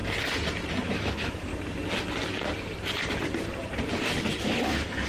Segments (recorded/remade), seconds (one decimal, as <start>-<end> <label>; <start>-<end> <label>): 0.0-0.7 recorded; 0.7-1.5 remade; 1.5-4.4 recorded; 4.4-5.1 remade